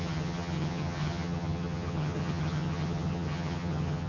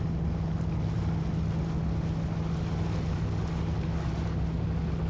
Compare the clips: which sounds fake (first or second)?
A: first